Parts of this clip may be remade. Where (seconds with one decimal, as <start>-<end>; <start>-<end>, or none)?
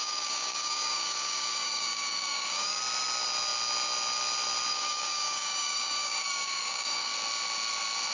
0.0-2.8; 4.7-7.1